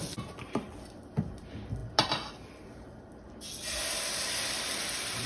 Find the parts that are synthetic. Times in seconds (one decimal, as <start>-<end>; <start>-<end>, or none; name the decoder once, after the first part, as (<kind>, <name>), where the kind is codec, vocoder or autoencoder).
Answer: none